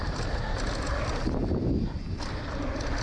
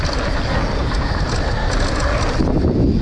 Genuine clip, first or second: second